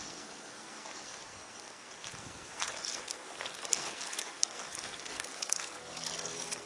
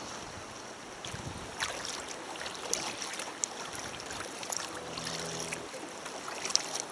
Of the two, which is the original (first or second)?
second